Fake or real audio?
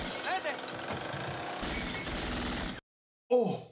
real